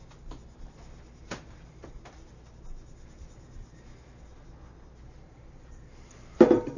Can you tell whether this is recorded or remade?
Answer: recorded